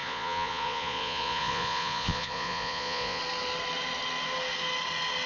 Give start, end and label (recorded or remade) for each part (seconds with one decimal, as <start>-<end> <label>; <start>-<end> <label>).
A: 0.0-3.2 remade; 3.2-5.3 recorded